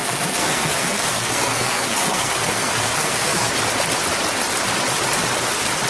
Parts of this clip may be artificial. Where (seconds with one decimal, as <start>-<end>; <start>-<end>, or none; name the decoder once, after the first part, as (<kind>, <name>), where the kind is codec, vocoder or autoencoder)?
0.0-3.5 (codec, SNAC)